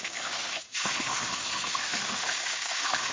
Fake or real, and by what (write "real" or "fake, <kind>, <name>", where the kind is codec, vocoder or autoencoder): fake, autoencoder, DAC-VAE